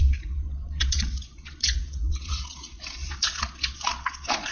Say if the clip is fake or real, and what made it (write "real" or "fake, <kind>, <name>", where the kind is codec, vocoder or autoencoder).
fake, vocoder, Vocos